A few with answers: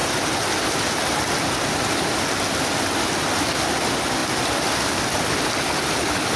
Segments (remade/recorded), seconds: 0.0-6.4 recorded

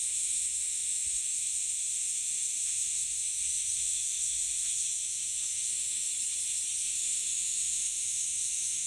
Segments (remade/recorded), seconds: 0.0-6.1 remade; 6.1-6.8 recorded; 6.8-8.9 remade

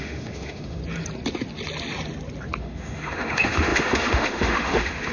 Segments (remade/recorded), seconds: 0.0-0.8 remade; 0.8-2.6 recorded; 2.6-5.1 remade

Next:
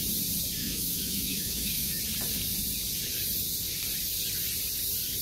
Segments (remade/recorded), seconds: 0.0-0.6 recorded; 0.6-2.0 remade; 2.0-5.2 recorded

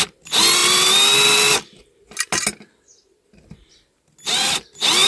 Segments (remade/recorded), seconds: 0.0-5.1 recorded